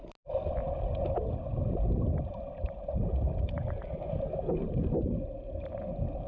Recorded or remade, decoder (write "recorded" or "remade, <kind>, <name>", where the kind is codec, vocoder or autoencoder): recorded